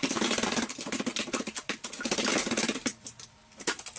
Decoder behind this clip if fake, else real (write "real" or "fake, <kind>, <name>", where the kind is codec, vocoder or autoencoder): real